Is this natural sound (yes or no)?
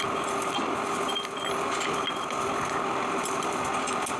yes